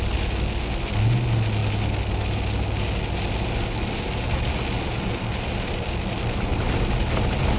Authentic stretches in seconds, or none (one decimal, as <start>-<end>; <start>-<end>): 0.0-7.6